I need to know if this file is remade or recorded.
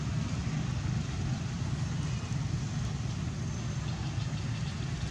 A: recorded